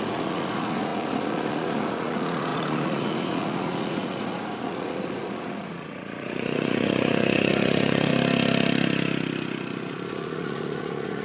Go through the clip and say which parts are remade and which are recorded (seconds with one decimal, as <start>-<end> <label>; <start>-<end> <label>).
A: 0.0-8.1 remade; 8.1-10.1 recorded; 10.1-11.2 remade